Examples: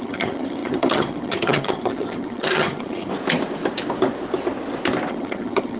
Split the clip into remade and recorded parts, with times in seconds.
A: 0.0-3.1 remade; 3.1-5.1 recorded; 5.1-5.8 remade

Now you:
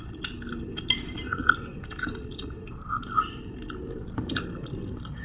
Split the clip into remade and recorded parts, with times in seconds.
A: 0.0-5.2 recorded

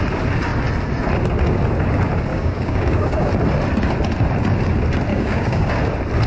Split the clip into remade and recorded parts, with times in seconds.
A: 0.0-2.3 recorded; 2.3-3.3 remade; 3.3-5.1 recorded; 5.1-5.7 remade; 5.7-6.3 recorded